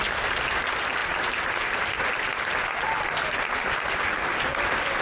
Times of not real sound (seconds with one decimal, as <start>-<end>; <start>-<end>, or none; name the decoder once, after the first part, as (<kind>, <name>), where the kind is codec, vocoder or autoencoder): 0.0-5.0 (vocoder, BigVGAN v2)